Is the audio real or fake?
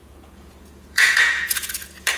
fake